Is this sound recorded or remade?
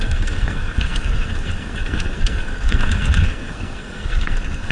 remade